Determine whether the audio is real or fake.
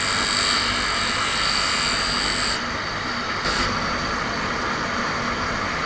real